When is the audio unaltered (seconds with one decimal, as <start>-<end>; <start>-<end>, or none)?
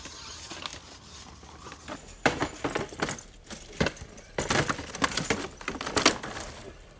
0.0-7.0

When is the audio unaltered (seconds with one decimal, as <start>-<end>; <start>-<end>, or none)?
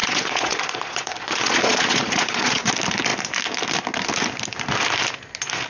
2.7-5.7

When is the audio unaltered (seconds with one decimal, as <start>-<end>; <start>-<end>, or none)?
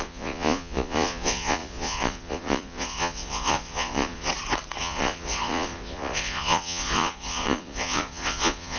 4.3-4.8